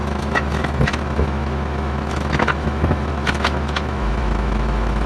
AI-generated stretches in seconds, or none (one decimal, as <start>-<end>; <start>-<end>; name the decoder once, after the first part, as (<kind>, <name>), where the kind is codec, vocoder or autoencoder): 0.0-5.1 (autoencoder, DAC-VAE)